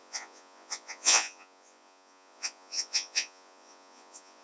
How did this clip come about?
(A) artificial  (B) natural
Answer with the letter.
A